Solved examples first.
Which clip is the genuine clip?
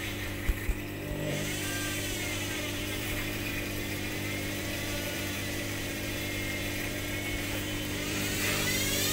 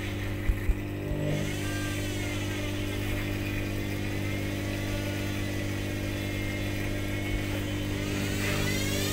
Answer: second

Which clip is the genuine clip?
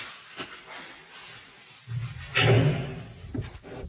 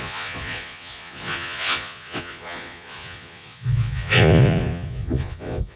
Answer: first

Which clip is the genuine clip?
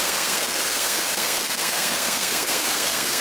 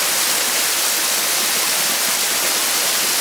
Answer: second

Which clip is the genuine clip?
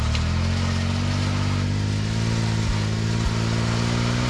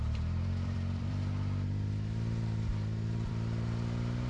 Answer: first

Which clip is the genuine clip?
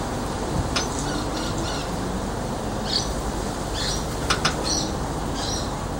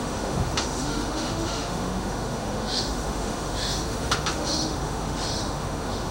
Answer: first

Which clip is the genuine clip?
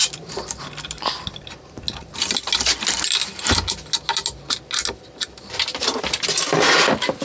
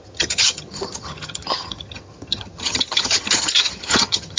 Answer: first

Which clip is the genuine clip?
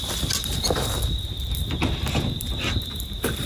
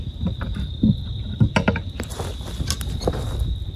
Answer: first